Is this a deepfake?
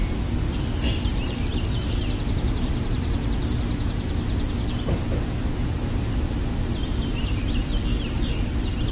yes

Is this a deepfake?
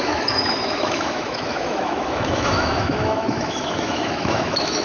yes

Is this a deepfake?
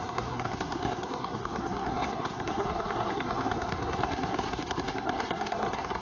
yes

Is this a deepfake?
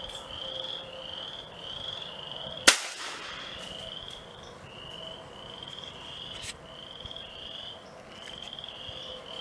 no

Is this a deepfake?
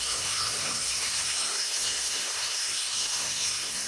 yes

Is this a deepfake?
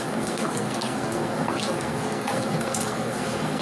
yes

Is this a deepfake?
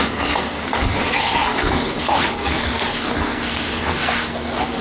yes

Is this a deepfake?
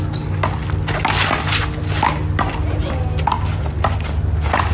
no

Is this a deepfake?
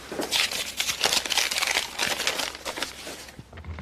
no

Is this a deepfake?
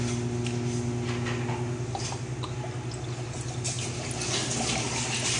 no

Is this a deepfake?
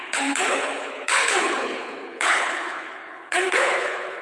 yes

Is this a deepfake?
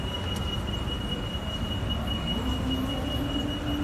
no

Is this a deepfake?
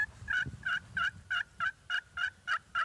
no